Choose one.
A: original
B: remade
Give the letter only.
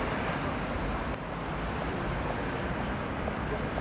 B